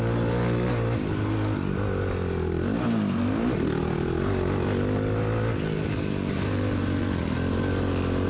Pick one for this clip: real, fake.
real